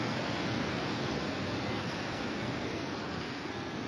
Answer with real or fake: fake